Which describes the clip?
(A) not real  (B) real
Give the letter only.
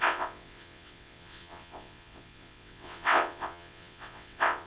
A